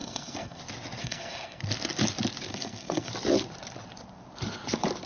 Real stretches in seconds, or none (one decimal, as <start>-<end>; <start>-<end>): 0.6-1.0; 1.6-2.5; 3.1-5.1

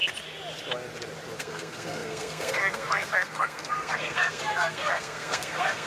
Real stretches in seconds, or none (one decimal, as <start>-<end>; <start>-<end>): 0.0-1.4

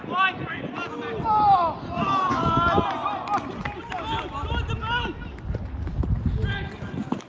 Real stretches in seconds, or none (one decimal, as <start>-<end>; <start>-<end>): 0.0-7.3